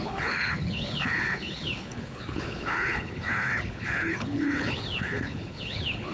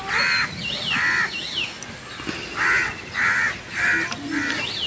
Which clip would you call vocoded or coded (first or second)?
first